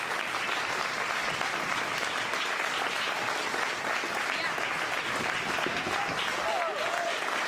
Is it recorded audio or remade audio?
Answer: recorded